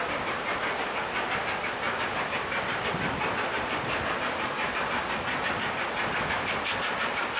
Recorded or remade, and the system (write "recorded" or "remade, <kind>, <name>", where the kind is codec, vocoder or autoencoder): recorded